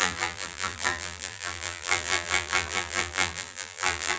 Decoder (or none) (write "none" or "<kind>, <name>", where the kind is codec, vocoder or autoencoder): vocoder, BigVGAN v2